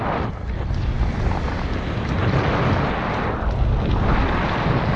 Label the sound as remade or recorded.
recorded